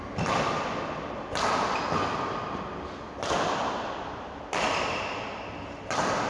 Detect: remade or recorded recorded